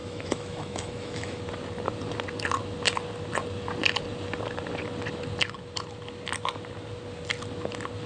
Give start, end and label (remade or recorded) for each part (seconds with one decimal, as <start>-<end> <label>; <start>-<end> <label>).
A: 0.0-1.4 remade; 1.4-8.1 recorded